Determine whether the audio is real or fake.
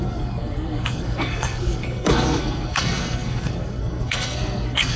fake